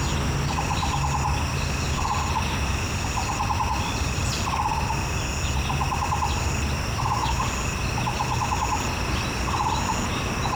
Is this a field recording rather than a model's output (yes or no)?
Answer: yes